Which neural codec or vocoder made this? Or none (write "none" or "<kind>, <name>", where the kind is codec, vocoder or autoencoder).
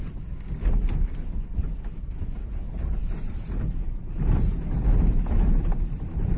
none